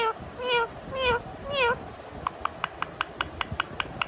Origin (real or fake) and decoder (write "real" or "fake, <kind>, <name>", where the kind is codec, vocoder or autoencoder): real